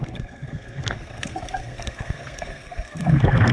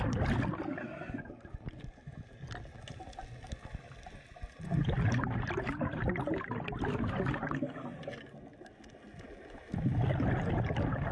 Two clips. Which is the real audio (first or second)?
second